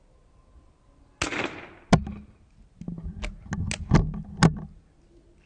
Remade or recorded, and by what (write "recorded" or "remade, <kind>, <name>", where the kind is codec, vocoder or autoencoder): recorded